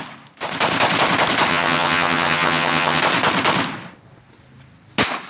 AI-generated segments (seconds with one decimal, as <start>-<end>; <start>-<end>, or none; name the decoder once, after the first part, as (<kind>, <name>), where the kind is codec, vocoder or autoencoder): 1.5-3.0 (vocoder, HiFi-GAN)